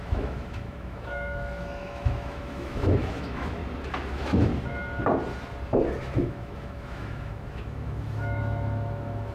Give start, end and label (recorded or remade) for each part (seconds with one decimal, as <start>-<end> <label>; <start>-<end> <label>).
0.0-3.6 remade; 3.6-4.1 recorded; 4.1-4.5 remade; 4.5-6.0 recorded; 6.0-9.3 remade